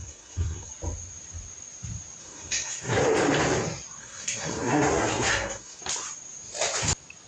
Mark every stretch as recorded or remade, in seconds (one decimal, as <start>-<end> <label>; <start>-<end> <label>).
0.0-0.7 remade; 0.7-2.2 recorded; 2.2-3.0 remade; 3.0-4.0 recorded; 4.0-5.8 remade; 5.8-7.3 recorded